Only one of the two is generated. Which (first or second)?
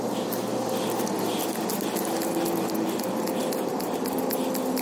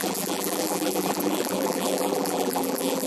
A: second